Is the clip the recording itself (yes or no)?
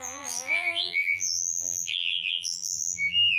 no